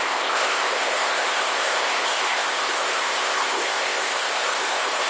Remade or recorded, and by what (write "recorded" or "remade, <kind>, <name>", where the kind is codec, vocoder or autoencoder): remade, codec, ZipCodec